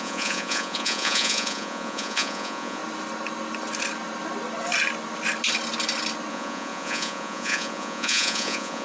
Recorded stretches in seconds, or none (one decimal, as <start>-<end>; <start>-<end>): 2.8-6.3